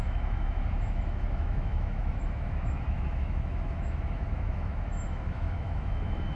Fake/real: fake